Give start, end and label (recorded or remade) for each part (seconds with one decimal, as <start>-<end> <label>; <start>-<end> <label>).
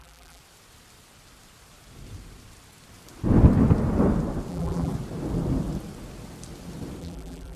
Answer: 0.0-0.4 remade; 0.4-4.5 recorded; 4.5-4.9 remade; 4.9-7.0 recorded; 7.0-7.6 remade